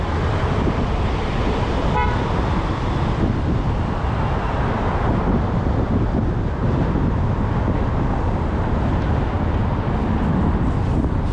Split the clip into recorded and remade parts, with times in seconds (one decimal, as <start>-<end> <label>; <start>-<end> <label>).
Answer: 0.0-6.6 remade; 6.6-8.2 recorded; 8.2-9.6 remade; 9.6-10.3 recorded; 10.3-11.3 remade